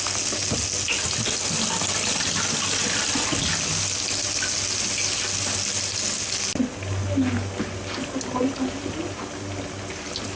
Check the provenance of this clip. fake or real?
real